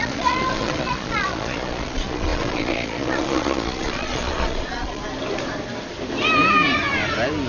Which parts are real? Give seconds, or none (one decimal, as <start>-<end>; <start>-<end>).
5.0-7.5

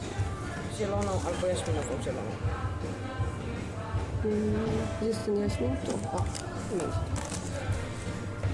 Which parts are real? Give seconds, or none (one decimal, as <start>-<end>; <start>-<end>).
0.0-8.5

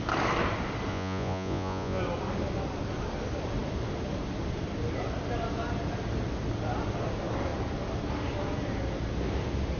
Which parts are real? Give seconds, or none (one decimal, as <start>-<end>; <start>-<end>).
0.0-0.9; 2.0-9.8

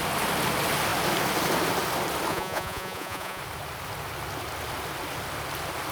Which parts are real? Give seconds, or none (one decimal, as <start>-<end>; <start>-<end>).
0.0-2.3; 3.4-5.9

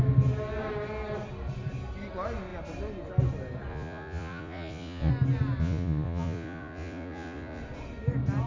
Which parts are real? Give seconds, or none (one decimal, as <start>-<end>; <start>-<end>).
0.0-3.7; 5.1-5.6; 7.6-8.5

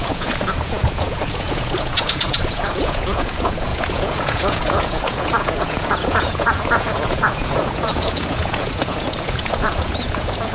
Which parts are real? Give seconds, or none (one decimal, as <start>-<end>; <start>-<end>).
none

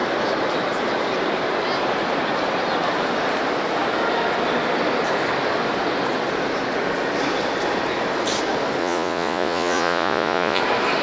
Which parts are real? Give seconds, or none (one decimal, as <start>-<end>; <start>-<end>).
0.0-8.8; 10.6-11.0

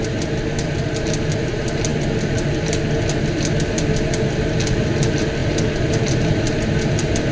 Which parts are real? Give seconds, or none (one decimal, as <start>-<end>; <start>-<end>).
0.0-7.3